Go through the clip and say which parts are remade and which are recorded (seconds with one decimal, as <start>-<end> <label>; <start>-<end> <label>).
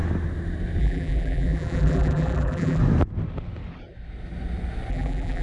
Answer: 0.0-0.8 recorded; 0.8-2.8 remade; 2.8-4.9 recorded; 4.9-5.4 remade